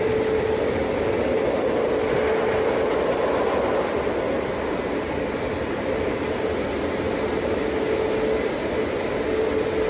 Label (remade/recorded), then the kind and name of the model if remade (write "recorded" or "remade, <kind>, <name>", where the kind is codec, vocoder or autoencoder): recorded